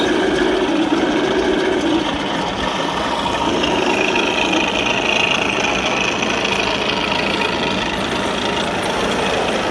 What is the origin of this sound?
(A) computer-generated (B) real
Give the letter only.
B